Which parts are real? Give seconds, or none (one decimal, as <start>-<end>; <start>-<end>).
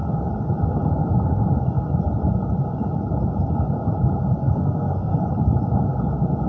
0.0-4.4; 5.1-6.5